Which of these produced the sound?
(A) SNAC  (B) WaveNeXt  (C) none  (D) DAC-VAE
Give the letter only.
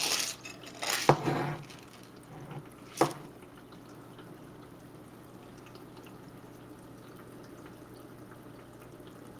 C